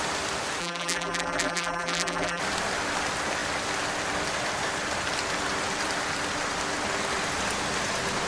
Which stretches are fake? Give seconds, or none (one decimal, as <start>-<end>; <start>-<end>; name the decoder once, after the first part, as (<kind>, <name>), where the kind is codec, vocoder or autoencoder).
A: 0.6-2.4 (vocoder, BigVGAN v2)